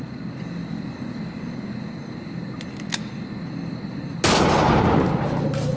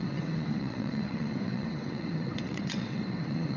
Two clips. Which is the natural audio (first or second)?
first